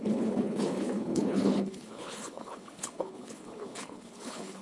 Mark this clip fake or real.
fake